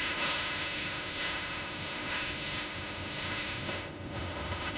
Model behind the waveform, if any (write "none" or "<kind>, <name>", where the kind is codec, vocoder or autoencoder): autoencoder, DAC-VAE